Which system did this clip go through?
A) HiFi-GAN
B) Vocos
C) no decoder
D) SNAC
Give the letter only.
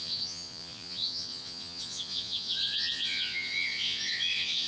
B